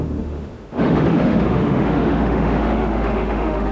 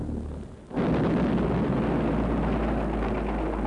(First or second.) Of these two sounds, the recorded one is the second